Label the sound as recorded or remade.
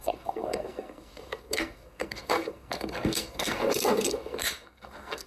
remade